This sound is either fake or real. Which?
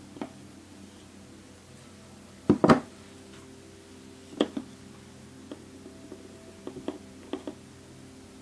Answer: real